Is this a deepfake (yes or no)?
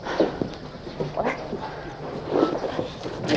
no